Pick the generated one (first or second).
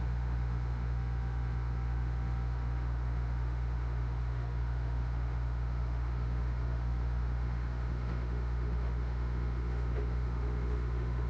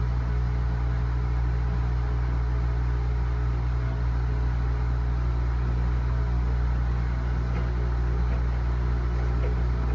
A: first